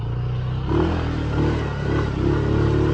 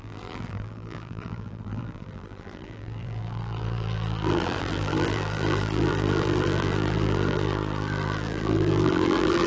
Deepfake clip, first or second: second